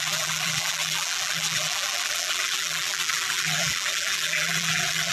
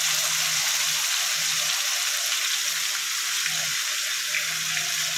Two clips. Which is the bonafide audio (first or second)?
second